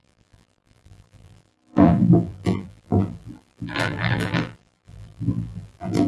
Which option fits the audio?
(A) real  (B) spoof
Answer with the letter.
B